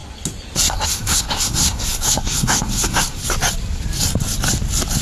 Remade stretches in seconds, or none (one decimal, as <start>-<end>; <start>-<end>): 0.7-3.2